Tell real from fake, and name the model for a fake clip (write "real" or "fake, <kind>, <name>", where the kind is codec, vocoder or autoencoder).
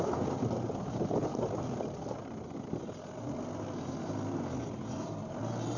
real